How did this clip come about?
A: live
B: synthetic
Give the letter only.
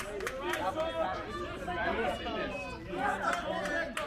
A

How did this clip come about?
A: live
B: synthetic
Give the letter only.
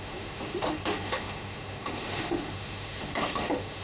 B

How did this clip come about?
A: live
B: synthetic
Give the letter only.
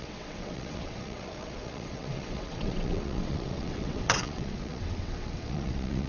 B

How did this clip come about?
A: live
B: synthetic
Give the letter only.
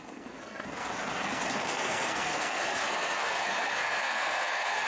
B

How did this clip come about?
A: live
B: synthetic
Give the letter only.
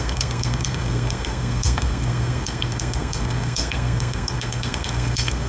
B